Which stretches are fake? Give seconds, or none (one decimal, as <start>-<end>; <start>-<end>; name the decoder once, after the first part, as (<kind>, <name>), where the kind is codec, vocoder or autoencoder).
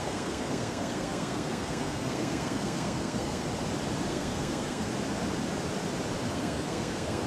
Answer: 0.0-3.4 (codec, SNAC); 4.1-4.9; 6.3-7.3